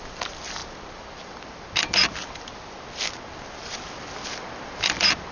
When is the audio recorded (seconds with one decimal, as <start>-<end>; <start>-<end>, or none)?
0.0-5.3